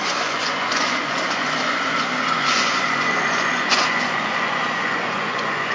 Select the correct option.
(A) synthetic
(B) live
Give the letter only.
A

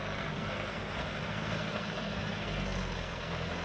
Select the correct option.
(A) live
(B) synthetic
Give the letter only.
B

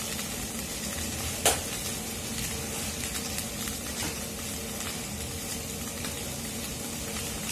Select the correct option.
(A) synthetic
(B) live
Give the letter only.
B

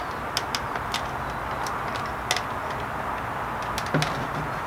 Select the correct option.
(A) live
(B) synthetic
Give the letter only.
A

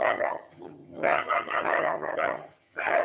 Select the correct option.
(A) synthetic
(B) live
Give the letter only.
A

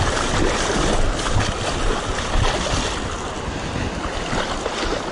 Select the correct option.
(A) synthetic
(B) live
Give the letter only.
B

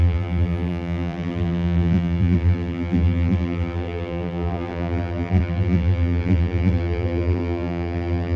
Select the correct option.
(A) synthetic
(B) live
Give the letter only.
A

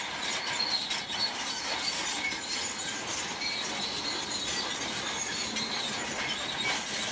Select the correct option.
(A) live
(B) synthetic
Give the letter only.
A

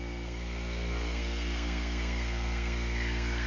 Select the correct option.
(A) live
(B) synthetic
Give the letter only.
B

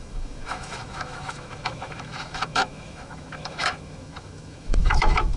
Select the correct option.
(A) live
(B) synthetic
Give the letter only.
B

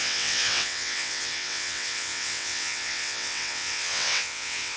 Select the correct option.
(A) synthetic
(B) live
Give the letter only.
A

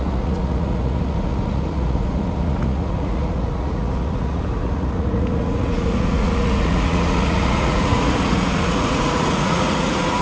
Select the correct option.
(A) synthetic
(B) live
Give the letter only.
A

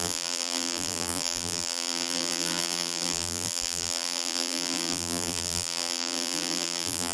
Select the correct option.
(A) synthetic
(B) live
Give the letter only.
A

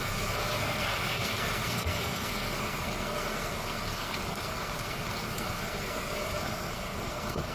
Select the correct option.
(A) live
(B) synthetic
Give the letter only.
B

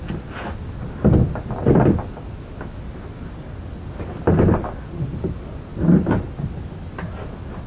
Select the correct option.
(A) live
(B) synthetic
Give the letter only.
A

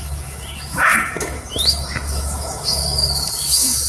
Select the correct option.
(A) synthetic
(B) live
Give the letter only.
A